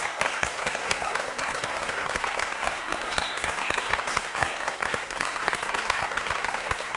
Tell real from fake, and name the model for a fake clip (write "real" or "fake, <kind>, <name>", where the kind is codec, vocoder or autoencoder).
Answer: fake, codec, SNAC